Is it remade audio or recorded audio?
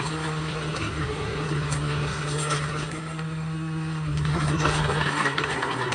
remade